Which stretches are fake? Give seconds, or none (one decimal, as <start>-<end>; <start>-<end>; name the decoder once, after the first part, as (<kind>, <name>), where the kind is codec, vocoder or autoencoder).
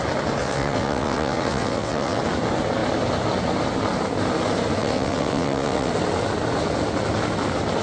0.4-2.2 (vocoder, WaveNeXt); 4.8-5.9